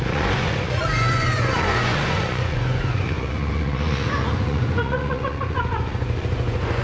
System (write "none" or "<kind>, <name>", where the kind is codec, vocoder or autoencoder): vocoder, Vocos